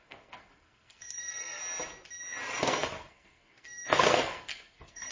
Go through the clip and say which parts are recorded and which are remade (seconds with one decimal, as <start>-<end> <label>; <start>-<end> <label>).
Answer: 0.0-1.6 remade; 1.6-2.6 recorded; 2.6-5.1 remade